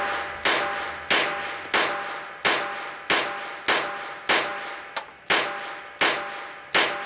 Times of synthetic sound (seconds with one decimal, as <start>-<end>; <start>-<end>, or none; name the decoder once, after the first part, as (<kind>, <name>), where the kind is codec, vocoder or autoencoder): none